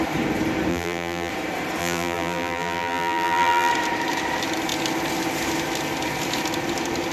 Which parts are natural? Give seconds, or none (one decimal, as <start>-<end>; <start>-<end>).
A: 0.0-0.7; 1.3-1.8; 3.7-7.1